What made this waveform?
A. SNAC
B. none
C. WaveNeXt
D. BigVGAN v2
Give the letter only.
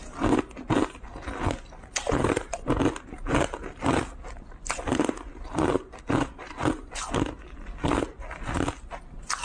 B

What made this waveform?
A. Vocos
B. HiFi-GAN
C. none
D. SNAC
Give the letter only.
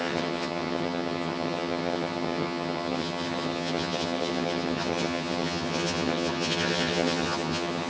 B